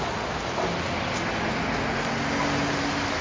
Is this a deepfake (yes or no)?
no